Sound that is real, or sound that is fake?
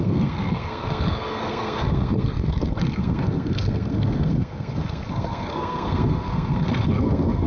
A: fake